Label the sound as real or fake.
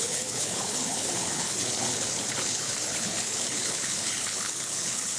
fake